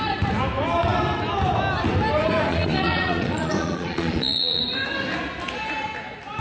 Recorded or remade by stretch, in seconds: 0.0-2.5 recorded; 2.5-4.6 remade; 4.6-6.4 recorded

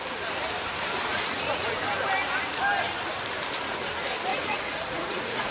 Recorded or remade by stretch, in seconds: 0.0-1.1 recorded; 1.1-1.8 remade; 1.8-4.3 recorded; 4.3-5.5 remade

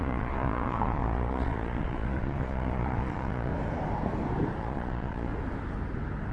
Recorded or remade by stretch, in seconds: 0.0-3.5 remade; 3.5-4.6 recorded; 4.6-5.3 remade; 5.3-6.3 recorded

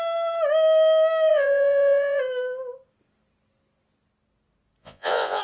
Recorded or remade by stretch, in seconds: 0.0-1.3 recorded; 1.3-2.2 remade; 2.2-4.8 recorded; 4.8-5.4 remade

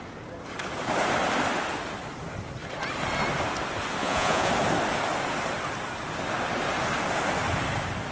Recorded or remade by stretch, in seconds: 0.0-4.0 recorded; 4.0-4.5 remade; 4.5-8.1 recorded

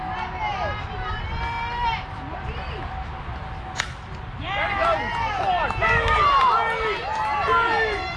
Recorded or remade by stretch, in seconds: 0.0-8.2 recorded

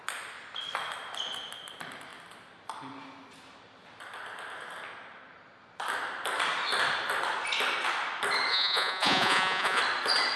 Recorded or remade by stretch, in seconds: 0.0-8.5 recorded; 8.5-9.8 remade; 9.8-10.4 recorded